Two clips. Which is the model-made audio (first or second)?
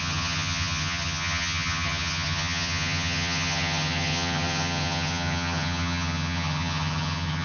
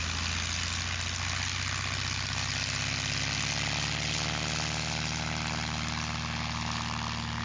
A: first